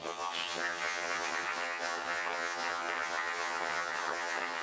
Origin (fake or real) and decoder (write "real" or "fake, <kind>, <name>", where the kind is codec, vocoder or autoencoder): fake, vocoder, HiFi-GAN